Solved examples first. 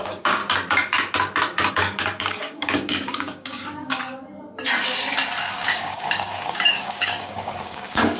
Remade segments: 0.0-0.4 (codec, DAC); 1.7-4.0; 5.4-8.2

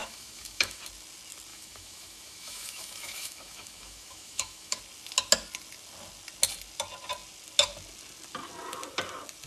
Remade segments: 0.0-0.8 (autoencoder, DAC-VAE); 1.5-4.8

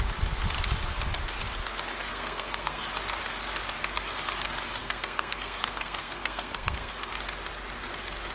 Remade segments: 2.1-2.8 (codec, SNAC); 4.8-7.1